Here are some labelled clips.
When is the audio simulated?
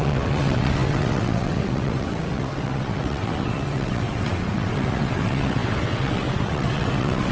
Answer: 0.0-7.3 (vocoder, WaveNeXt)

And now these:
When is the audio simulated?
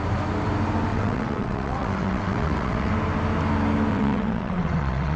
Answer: 0.9-2.9 (vocoder, WaveNeXt); 3.9-5.2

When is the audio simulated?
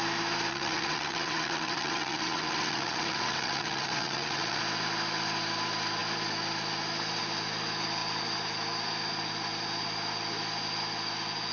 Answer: 0.5-4.6 (vocoder, WaveNeXt)